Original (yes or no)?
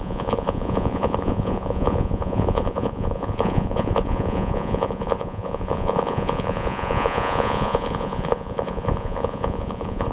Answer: no